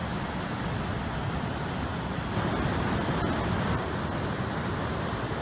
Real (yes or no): yes